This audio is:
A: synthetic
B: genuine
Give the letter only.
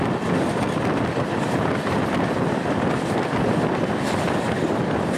B